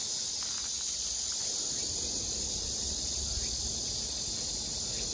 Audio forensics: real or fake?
real